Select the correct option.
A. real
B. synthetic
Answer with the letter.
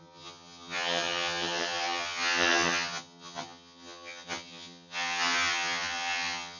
B